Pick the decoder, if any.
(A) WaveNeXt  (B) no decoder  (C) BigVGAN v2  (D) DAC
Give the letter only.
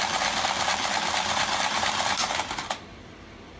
C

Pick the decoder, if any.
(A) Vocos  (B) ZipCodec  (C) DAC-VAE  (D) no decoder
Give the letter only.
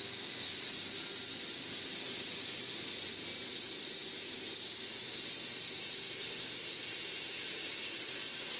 D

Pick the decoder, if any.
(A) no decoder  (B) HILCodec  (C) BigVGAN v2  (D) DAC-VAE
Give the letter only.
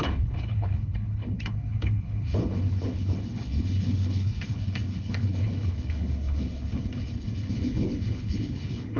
B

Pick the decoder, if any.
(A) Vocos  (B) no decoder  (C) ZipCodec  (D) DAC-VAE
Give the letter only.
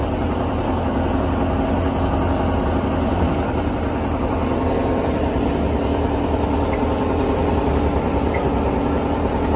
B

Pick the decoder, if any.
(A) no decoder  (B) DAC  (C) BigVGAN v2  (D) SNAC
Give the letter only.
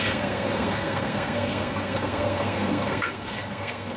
D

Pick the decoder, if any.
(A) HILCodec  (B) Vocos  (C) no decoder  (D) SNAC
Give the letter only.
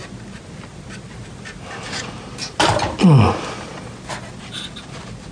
C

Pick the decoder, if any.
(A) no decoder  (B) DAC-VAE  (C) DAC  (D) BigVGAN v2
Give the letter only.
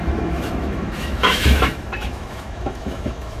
B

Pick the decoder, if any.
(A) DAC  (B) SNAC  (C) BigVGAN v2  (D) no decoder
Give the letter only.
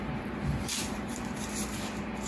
C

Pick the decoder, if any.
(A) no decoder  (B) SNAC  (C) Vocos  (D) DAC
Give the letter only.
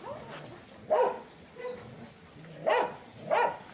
A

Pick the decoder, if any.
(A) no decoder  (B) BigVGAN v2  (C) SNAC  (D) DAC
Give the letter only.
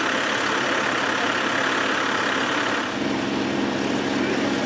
A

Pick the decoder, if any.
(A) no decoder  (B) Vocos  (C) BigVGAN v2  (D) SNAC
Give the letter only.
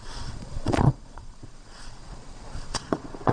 B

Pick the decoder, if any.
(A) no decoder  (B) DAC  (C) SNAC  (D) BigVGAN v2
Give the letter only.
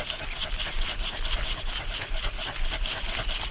A